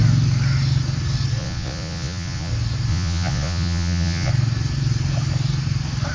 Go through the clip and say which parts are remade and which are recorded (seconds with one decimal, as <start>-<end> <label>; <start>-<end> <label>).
0.0-1.4 recorded; 1.4-2.5 remade; 2.5-2.9 recorded; 2.9-4.3 remade; 4.3-6.1 recorded